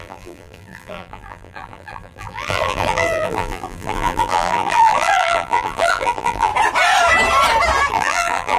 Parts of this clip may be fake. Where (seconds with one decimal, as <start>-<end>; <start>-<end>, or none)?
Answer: 0.0-6.5; 7.9-8.6